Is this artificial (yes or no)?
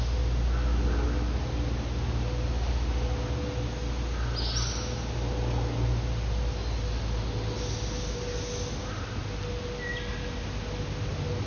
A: no